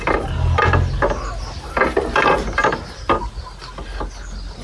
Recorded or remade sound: recorded